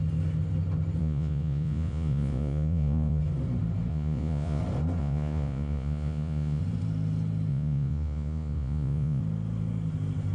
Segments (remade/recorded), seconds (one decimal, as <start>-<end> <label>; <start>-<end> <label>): 0.0-1.0 recorded; 1.0-3.2 remade; 3.2-3.9 recorded; 3.9-4.6 remade; 4.6-5.0 recorded; 5.0-6.6 remade; 6.6-7.5 recorded; 7.5-9.2 remade; 9.2-10.3 recorded